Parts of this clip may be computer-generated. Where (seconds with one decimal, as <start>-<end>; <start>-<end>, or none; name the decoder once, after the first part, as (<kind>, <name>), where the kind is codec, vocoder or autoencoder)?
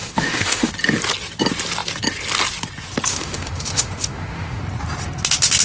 0.0-0.7 (autoencoder, DAC-VAE); 3.1-4.6